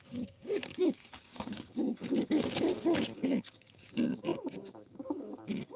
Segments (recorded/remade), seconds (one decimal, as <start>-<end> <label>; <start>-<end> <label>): 0.0-5.8 remade